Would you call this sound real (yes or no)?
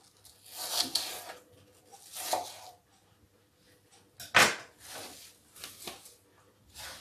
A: yes